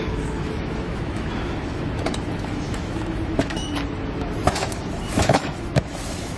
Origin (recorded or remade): remade